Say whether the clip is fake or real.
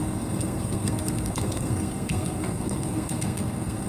fake